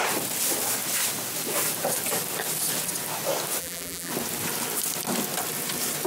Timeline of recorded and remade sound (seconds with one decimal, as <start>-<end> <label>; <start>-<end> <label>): 0.0-3.6 recorded; 3.6-4.1 remade; 4.1-6.1 recorded